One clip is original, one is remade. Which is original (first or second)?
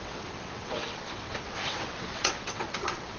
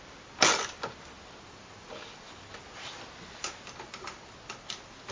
second